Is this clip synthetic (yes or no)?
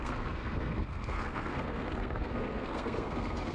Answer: yes